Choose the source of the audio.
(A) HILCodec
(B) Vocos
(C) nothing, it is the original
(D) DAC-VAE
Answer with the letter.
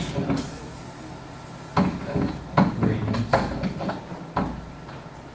C